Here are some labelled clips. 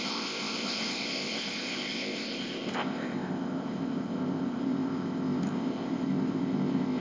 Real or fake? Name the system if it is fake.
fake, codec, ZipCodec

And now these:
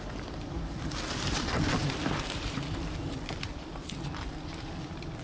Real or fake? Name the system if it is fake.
fake, vocoder, BigVGAN v2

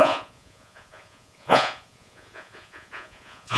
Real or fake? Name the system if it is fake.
fake, vocoder, Vocos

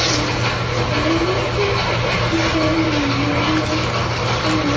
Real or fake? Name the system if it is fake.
real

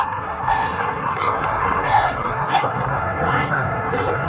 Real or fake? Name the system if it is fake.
fake, codec, SNAC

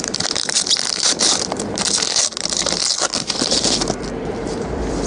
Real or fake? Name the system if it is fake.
fake, vocoder, BigVGAN v2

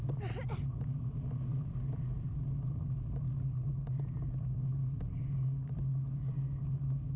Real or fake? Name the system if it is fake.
real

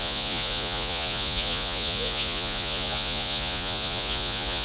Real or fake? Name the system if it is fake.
fake, vocoder, Vocos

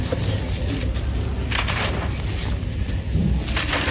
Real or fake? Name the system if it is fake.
real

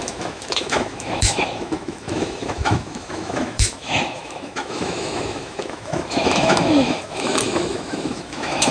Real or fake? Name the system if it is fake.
fake, autoencoder, DAC-VAE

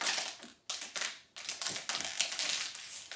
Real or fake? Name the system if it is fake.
real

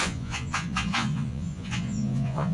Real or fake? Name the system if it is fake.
fake, vocoder, Vocos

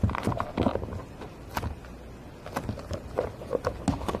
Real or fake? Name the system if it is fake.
real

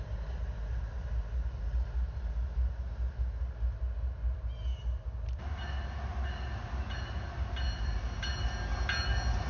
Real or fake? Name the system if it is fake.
real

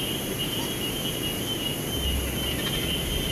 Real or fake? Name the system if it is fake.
real